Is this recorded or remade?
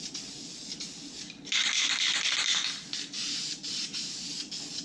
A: recorded